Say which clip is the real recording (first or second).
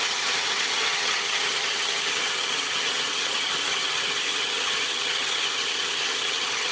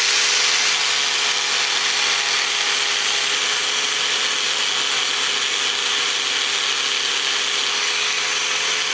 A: second